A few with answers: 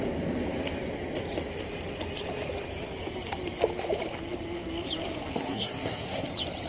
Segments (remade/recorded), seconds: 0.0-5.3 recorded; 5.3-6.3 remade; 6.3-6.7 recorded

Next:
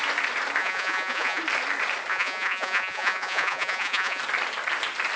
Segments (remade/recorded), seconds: 0.0-0.6 recorded; 0.6-1.4 remade; 1.4-2.1 recorded; 2.1-4.2 remade; 4.2-5.2 recorded